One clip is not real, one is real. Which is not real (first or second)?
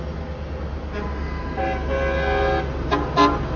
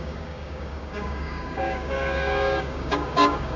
second